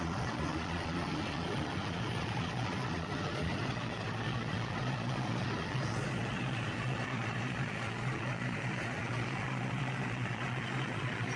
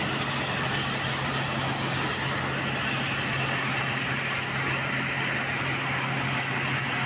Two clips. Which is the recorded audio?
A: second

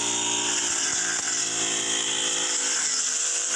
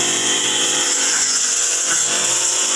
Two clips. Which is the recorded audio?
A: first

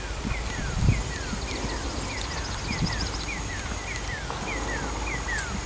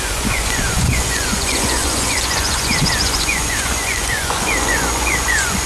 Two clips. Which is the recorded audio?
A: first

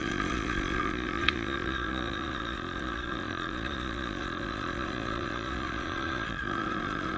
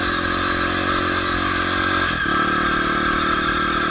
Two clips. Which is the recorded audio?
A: second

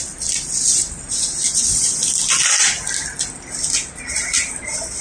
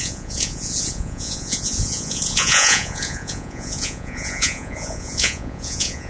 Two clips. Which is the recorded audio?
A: first